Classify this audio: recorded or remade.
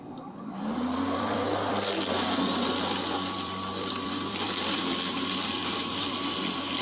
remade